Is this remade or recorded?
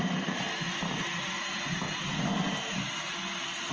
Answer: recorded